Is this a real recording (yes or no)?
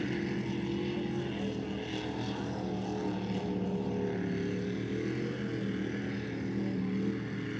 yes